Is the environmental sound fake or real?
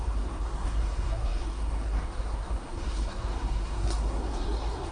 fake